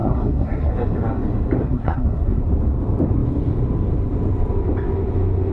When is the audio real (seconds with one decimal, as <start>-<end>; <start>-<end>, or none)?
0.7-1.6; 2.4-5.5